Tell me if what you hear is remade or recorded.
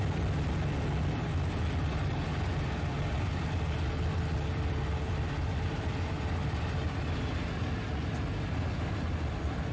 recorded